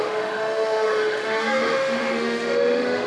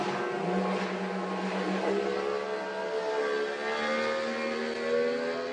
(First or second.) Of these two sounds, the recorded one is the second